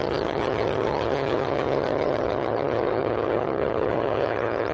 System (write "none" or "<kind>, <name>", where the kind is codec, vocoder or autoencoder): vocoder, HiFi-GAN